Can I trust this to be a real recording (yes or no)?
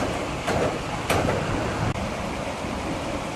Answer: yes